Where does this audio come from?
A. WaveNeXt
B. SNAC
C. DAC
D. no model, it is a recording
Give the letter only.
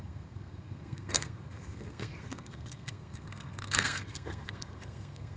B